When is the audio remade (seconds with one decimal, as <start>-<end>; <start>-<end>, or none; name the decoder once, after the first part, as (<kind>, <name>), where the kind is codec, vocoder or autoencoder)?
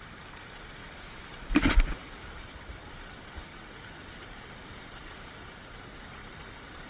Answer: 0.8-1.3 (autoencoder, DAC-VAE)